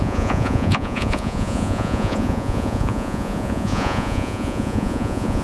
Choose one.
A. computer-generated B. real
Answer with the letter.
A